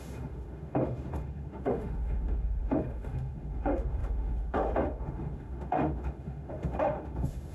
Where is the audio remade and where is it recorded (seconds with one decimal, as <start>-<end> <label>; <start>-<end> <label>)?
0.0-7.5 remade